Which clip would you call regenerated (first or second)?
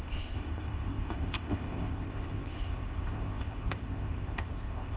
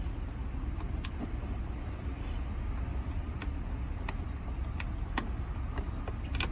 first